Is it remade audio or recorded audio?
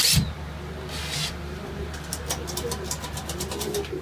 recorded